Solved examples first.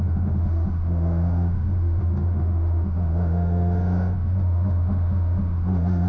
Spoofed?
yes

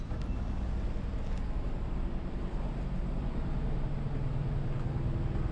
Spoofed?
no